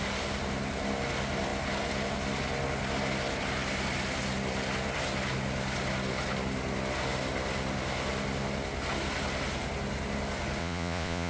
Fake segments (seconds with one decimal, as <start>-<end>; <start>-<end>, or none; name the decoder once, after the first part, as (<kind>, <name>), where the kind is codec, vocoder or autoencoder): 10.6-11.3 (vocoder, Vocos)

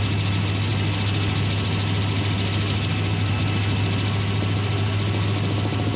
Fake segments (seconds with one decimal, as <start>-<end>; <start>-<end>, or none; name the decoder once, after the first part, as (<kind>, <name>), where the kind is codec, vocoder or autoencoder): none